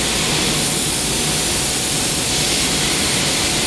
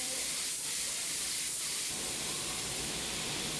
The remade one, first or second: second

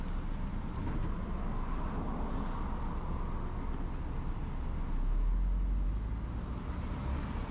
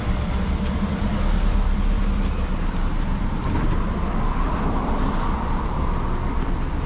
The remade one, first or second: second